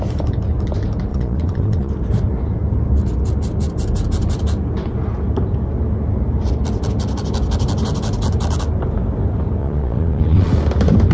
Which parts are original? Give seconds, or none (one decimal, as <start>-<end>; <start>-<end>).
0.0-1.1; 1.9-9.6; 10.5-11.1